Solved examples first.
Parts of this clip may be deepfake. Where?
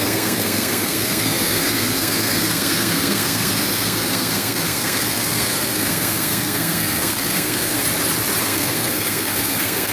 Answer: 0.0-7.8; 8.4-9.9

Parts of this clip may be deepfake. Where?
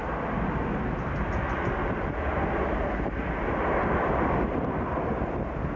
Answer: none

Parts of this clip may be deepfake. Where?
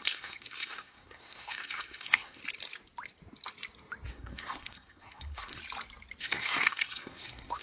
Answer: 0.0-2.4; 4.1-5.6; 6.2-7.6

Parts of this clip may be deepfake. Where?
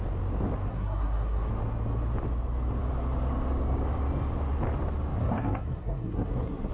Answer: 0.7-1.5; 5.2-6.7